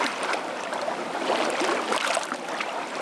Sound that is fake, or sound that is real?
fake